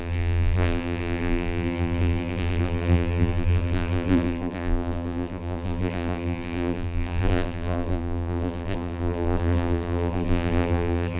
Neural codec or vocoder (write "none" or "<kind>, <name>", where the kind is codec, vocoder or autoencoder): vocoder, BigVGAN v2